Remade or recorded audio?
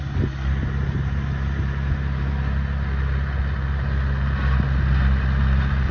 recorded